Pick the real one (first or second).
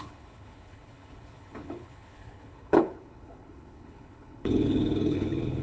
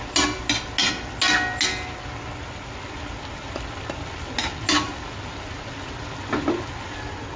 second